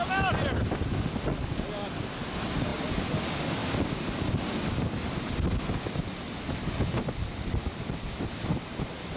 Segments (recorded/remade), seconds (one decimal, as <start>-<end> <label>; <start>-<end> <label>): 0.0-9.2 recorded